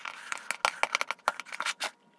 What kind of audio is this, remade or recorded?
recorded